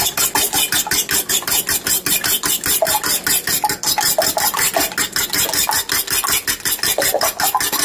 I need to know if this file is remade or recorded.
recorded